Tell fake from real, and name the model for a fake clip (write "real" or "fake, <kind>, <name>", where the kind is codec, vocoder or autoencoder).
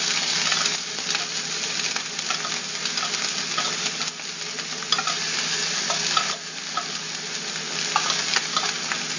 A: real